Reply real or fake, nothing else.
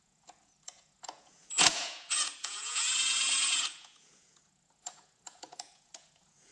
fake